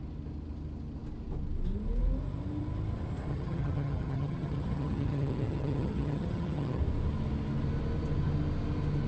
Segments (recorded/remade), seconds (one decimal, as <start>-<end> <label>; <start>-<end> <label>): 0.0-3.3 recorded; 3.3-6.8 remade; 6.8-9.1 recorded